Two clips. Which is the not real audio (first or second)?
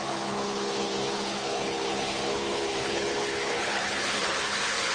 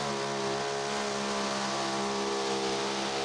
first